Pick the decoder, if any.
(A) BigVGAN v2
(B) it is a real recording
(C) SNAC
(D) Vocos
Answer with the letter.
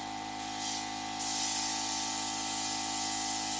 B